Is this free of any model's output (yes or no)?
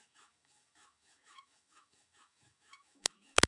no